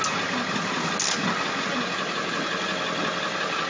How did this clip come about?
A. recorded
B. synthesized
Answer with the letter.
A